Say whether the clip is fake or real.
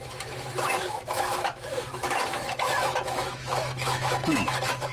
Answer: fake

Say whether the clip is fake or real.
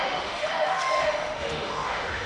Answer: fake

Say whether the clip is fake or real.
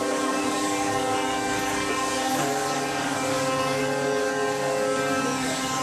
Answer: fake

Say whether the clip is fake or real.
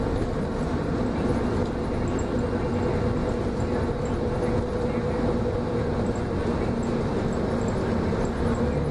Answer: real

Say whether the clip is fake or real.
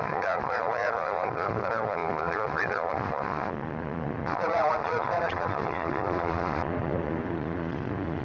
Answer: fake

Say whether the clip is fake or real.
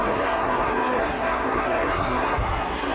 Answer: fake